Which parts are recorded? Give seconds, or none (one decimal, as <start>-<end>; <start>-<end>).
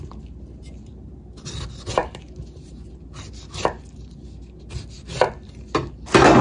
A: 0.0-6.4